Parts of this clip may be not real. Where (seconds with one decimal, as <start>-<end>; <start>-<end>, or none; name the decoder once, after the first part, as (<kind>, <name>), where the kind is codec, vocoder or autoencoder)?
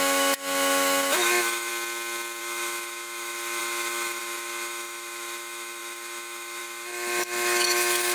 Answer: 0.0-1.7 (autoencoder, DAC-VAE); 2.4-8.1